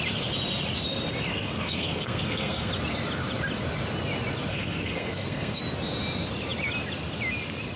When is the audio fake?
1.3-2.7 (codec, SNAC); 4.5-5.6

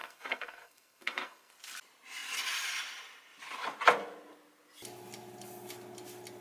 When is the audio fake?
0.0-1.5 (codec, SNAC)

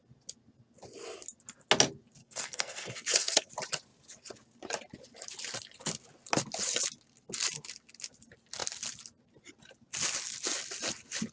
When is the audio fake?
2.2-3.5 (codec, SNAC)

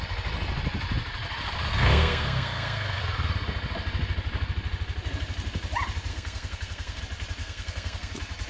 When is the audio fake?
1.7-3.0 (codec, SNAC); 6.1-7.0; 7.4-8.1

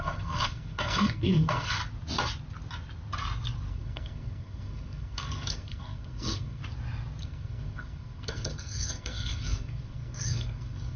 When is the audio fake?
0.0-1.8 (codec, SNAC); 3.7-6.6; 7.2-11.0

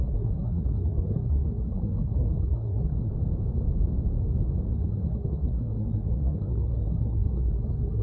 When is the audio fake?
0.0-3.1 (codec, SNAC); 4.7-8.0

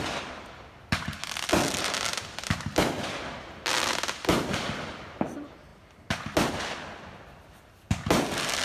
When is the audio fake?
none